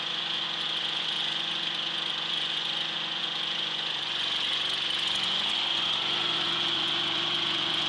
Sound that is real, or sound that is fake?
fake